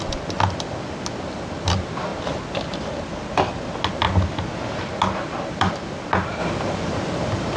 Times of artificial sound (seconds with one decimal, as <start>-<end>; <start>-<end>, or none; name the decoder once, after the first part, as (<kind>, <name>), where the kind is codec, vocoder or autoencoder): 0.0-2.1 (vocoder, BigVGAN v2); 4.8-7.6